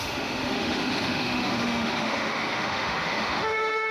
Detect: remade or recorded remade